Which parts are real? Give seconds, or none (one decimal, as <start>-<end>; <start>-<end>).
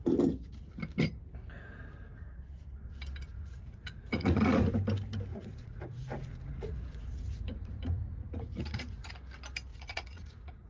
0.0-3.3; 4.7-5.3; 9.1-9.7